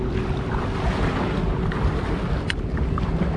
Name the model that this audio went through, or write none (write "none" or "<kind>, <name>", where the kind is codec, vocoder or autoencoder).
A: vocoder, BigVGAN v2